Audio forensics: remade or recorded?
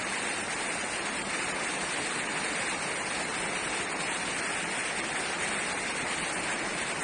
recorded